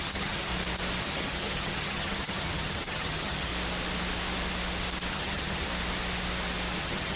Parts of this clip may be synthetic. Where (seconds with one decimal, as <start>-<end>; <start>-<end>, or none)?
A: 0.0-0.5; 1.0-3.5; 5.1-5.7; 6.8-7.2